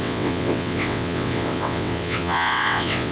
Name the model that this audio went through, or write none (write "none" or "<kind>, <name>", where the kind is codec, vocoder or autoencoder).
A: vocoder, WaveNeXt